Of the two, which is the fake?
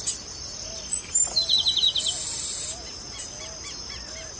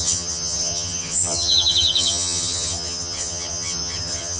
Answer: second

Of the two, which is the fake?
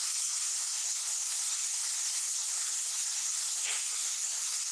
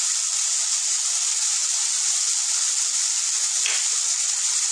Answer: first